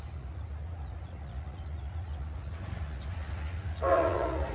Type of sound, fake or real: fake